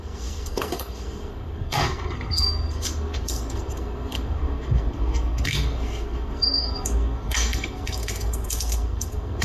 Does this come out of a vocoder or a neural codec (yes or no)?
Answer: yes